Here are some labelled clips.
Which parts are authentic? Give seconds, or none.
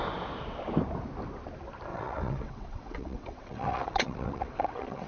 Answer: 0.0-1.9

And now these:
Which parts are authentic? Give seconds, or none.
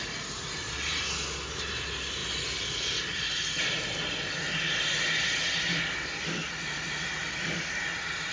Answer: 0.0-8.3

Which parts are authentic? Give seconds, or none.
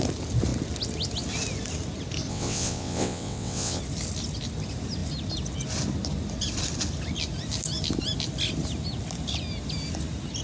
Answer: 0.0-2.3; 3.8-10.4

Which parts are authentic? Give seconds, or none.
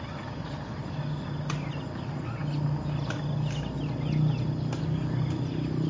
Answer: 0.0-5.9